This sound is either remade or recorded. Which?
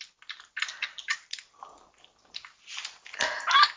recorded